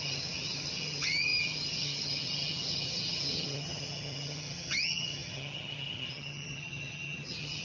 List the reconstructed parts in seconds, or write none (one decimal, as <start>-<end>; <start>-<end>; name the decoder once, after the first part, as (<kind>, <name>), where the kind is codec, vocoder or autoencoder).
0.0-7.6 (vocoder, HiFi-GAN)